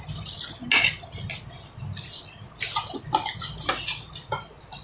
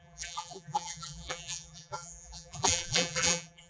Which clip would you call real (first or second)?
first